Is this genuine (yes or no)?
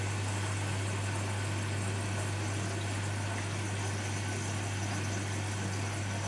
yes